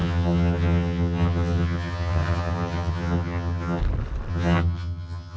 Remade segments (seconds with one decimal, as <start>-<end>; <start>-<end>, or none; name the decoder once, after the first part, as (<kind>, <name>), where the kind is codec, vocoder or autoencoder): 0.0-3.8 (vocoder, HiFi-GAN); 4.3-5.4